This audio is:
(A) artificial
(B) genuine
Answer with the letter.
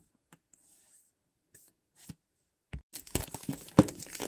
A